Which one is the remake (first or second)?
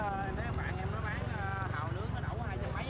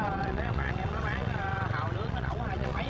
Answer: second